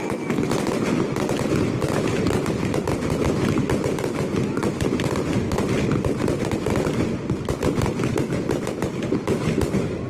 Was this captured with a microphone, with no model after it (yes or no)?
yes